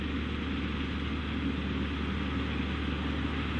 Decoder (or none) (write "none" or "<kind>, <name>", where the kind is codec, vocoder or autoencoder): none